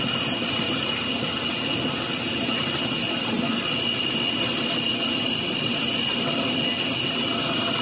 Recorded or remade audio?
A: recorded